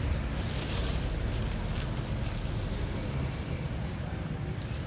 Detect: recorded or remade recorded